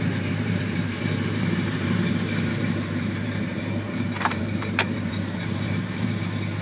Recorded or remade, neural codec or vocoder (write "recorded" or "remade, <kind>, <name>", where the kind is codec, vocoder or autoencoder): remade, vocoder, BigVGAN v2